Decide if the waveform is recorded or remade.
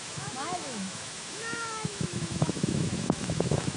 remade